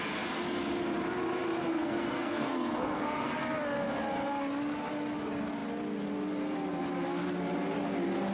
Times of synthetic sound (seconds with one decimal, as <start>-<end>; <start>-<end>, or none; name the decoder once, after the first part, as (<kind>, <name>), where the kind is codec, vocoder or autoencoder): 1.7-3.4 (codec, SNAC)